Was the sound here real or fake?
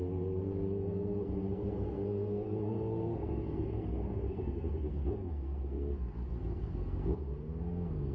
fake